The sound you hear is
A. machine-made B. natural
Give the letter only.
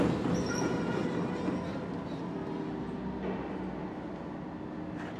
B